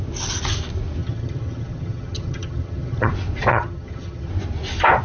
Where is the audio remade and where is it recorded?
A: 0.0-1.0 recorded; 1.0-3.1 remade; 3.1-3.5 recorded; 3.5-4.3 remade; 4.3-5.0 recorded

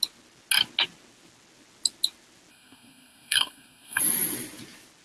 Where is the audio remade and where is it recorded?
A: 0.0-2.5 recorded; 2.5-4.0 remade; 4.0-5.0 recorded

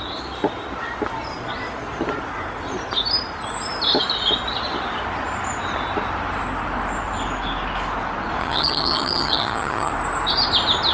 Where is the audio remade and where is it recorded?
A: 0.0-8.4 recorded; 8.4-9.9 remade; 9.9-10.9 recorded

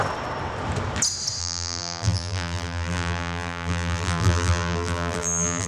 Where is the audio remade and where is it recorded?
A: 0.0-1.4 recorded; 1.4-5.7 remade

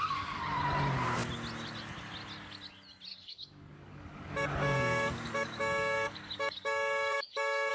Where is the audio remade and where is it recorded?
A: 0.0-3.1 recorded; 3.1-7.7 remade

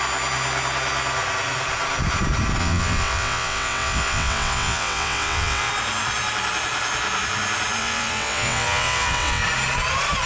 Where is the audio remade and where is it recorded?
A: 0.0-2.6 recorded; 2.6-5.7 remade; 5.7-7.8 recorded; 7.8-9.4 remade; 9.4-10.3 recorded